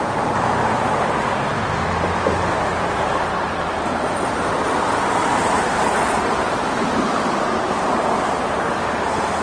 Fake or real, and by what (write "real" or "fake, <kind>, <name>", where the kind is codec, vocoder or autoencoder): fake, vocoder, BigVGAN v2